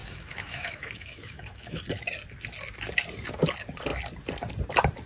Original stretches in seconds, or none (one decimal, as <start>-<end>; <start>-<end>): 1.8-5.1